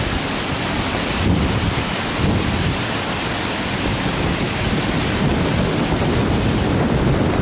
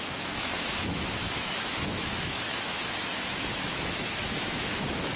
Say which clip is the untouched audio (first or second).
first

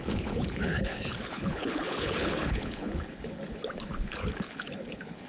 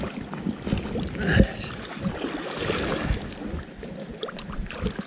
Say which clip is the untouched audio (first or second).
second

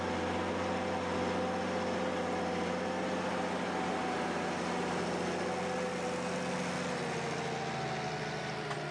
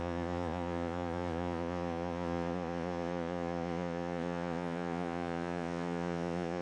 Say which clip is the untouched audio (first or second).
first